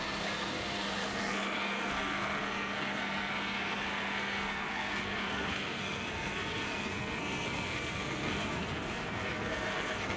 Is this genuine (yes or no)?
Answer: no